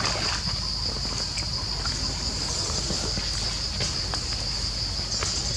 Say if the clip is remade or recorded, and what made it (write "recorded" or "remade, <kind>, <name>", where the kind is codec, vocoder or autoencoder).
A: recorded